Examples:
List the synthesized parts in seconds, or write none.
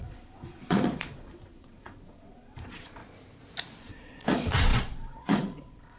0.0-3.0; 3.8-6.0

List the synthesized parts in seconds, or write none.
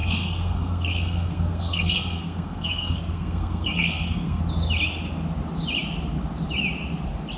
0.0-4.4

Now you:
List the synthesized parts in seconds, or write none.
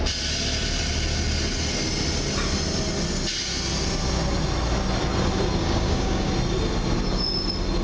5.6-6.3